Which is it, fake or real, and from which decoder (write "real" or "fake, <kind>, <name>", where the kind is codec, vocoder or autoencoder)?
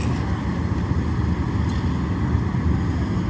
real